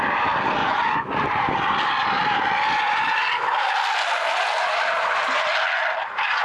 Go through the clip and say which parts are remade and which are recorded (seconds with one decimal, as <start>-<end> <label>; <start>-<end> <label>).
0.0-0.6 recorded; 0.6-1.1 remade; 1.1-6.4 recorded